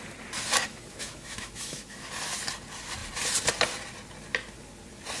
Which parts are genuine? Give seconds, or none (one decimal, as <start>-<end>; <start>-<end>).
0.0-0.7; 2.1-5.2